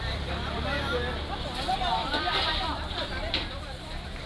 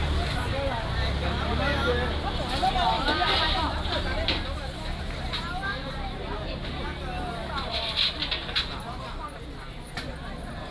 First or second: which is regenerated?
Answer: first